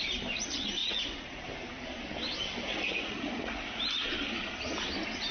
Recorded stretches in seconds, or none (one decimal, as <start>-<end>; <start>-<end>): 0.0-0.8; 1.4-2.7; 3.8-5.3